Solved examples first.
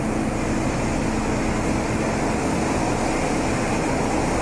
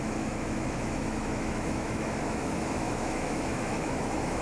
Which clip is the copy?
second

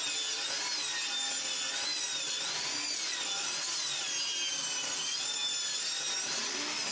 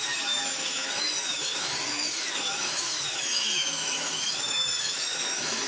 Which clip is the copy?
second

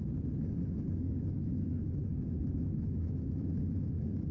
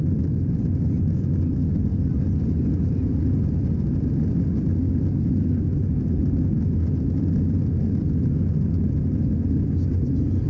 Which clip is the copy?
first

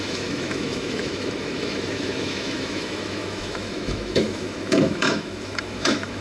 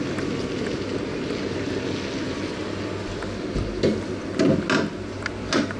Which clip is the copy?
first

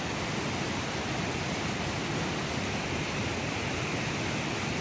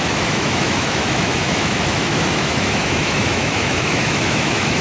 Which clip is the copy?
second